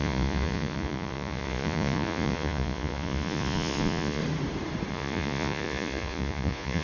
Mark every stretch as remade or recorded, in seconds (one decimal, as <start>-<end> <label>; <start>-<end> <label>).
0.0-4.2 remade; 4.2-4.9 recorded; 4.9-6.8 remade